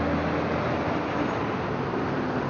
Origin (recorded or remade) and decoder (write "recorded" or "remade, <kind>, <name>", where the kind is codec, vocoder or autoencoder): recorded